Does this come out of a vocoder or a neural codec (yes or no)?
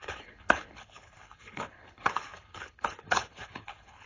yes